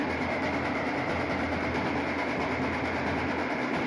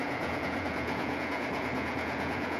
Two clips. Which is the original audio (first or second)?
first